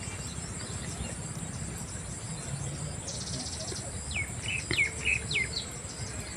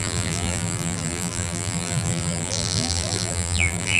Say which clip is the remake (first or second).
second